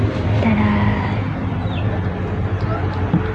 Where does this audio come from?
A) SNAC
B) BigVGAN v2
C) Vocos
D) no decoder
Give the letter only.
D